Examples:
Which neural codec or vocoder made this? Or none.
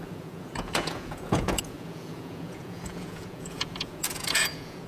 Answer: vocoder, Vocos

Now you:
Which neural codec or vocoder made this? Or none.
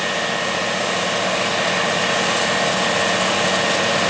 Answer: none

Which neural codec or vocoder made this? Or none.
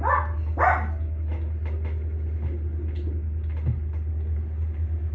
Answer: none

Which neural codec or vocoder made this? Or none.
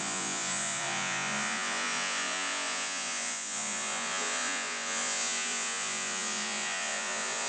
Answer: vocoder, Vocos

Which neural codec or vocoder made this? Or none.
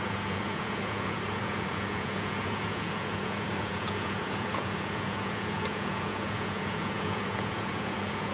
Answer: vocoder, Vocos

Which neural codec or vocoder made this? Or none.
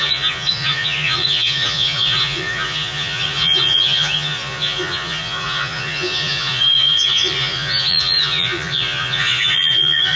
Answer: vocoder, Vocos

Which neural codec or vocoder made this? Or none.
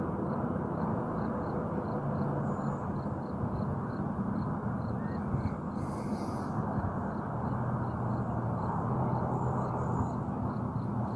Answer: none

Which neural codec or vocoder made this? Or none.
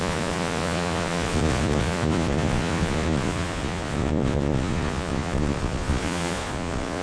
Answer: vocoder, Vocos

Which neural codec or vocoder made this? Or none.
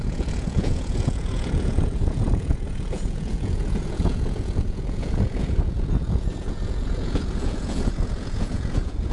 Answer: vocoder, Vocos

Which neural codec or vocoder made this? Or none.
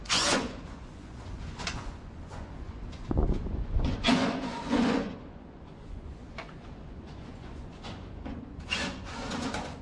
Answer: vocoder, Vocos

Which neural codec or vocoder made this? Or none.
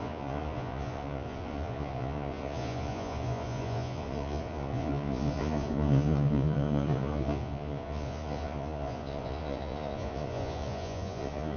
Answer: vocoder, Vocos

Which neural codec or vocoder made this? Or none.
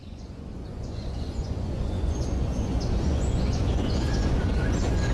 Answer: vocoder, Vocos